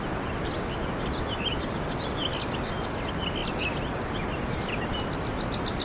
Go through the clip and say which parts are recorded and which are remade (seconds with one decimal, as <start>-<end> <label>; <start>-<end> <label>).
0.0-5.8 recorded